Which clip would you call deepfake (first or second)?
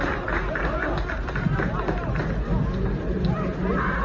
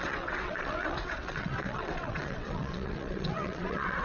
second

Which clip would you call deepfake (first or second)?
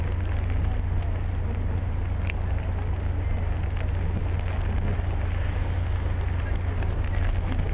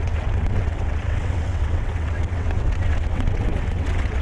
second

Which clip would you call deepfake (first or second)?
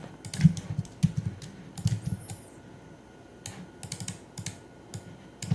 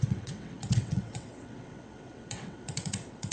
second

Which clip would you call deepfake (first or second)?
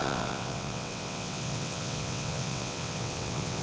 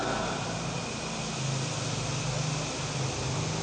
first